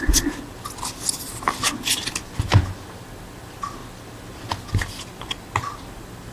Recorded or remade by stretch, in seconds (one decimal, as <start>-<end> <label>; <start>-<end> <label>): 0.0-6.3 recorded

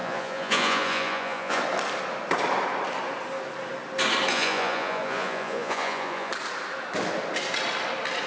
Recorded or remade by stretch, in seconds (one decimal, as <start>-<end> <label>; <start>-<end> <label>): 0.0-1.6 remade; 1.6-4.3 recorded; 4.3-6.3 remade; 6.3-8.3 recorded

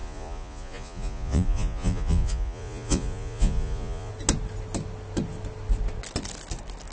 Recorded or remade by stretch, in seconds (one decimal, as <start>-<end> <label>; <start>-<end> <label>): 0.0-4.1 remade; 4.1-6.9 recorded

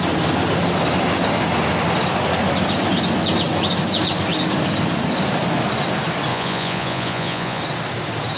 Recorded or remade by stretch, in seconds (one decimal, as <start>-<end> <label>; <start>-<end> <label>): 0.0-6.3 recorded; 6.3-7.6 remade; 7.6-8.4 recorded